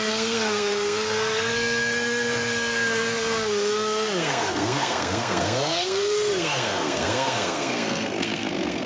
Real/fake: fake